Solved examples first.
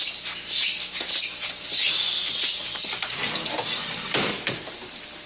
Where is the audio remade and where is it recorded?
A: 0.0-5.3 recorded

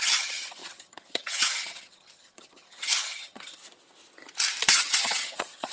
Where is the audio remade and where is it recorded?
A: 0.0-3.6 remade; 3.6-4.7 recorded; 4.7-5.7 remade

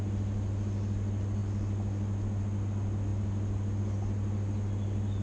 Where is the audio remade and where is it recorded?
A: 0.0-5.2 recorded

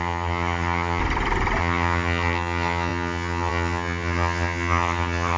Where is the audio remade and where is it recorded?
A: 0.0-1.0 remade; 1.0-1.6 recorded; 1.6-5.4 remade

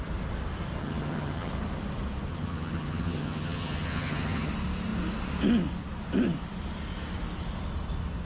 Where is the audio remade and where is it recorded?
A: 0.0-0.8 recorded; 0.8-1.5 remade; 1.5-2.3 recorded; 2.3-4.5 remade; 4.5-8.3 recorded

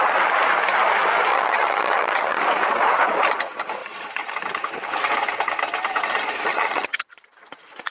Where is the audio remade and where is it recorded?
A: 0.0-1.3 recorded; 1.3-2.4 remade; 2.4-6.5 recorded; 6.5-7.1 remade; 7.1-7.9 recorded

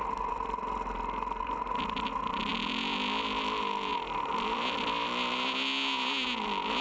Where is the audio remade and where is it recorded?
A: 0.0-6.8 recorded

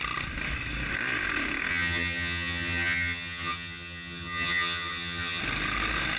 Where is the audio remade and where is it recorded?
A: 0.0-1.7 recorded; 1.7-5.4 remade; 5.4-6.2 recorded